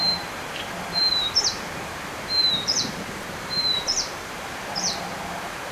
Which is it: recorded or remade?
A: remade